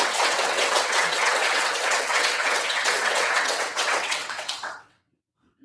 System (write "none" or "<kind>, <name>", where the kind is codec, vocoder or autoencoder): vocoder, WaveNeXt